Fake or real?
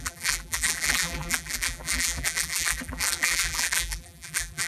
fake